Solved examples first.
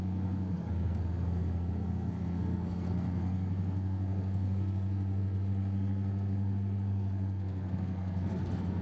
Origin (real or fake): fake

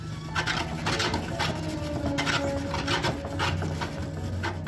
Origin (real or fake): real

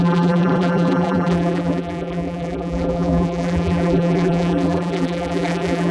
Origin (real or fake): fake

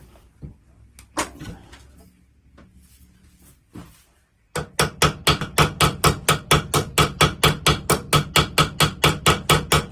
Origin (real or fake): real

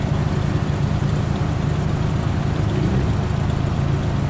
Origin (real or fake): real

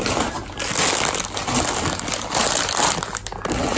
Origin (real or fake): real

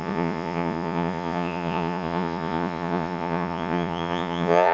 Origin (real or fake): fake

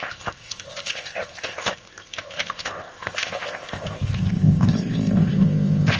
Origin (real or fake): fake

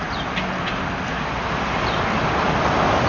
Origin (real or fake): real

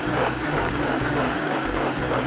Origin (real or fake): fake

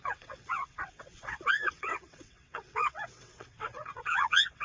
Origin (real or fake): fake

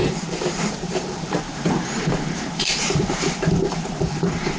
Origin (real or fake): fake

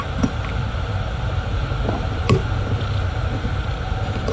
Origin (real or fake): real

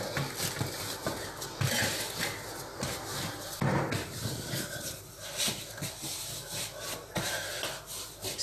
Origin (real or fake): real